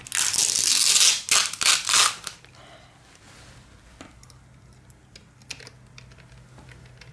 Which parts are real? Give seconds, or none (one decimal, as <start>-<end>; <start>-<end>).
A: 0.0-7.1